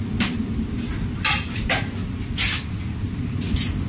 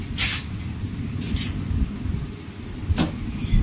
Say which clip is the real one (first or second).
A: first